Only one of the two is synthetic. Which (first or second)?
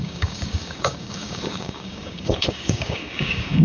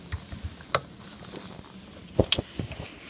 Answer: first